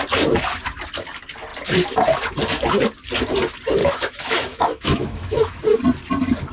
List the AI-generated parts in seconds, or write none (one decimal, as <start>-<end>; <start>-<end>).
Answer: 3.8-5.6